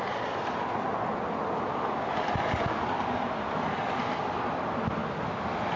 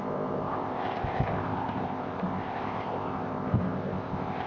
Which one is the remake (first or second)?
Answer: second